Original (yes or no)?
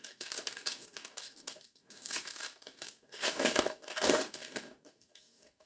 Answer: no